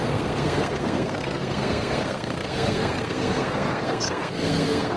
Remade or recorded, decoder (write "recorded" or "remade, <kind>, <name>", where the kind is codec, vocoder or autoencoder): remade, codec, SNAC